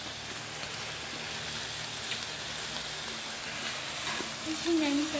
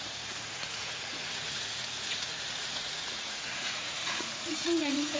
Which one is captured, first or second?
first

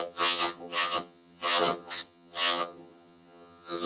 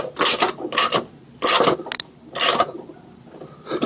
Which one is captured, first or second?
second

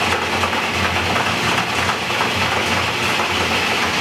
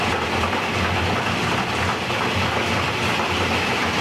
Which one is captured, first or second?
first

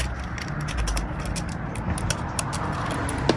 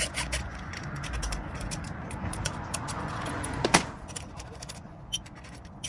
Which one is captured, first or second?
first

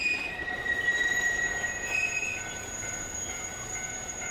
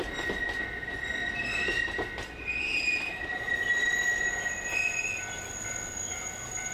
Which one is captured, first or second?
second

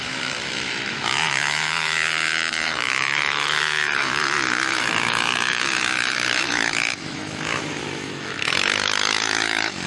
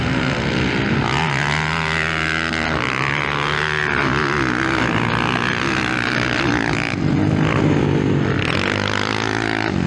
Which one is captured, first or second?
second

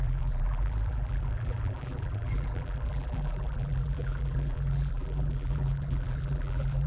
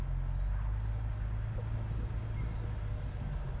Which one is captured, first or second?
second